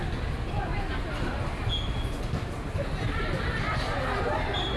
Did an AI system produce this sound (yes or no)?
no